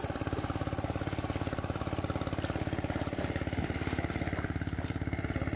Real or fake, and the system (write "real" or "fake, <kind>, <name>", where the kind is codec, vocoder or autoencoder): fake, vocoder, BigVGAN v2